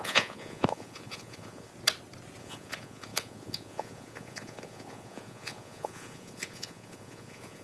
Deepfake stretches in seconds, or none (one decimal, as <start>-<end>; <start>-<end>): 0.0-1.7; 2.4-7.6